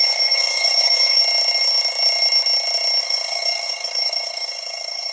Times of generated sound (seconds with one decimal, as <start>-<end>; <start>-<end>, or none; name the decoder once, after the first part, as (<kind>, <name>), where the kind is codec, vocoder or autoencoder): 0.0-1.2 (codec, DAC); 3.0-5.1